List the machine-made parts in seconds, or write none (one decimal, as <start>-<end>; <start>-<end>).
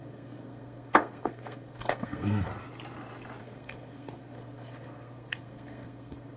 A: 0.0-2.5; 3.4-6.4